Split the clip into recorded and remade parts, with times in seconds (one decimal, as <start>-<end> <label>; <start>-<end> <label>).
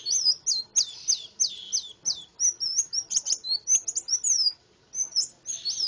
0.0-5.9 recorded